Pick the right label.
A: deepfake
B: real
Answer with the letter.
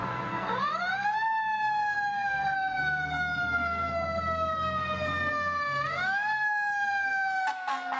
A